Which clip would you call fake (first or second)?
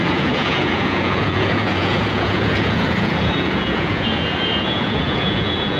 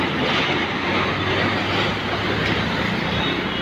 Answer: first